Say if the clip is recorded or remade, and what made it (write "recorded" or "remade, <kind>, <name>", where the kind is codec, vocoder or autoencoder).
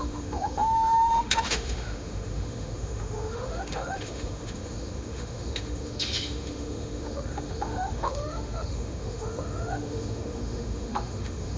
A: remade, autoencoder, DAC-VAE